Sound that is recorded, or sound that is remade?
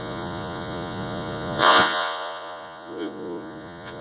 remade